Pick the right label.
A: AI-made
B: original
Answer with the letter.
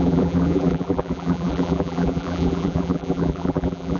A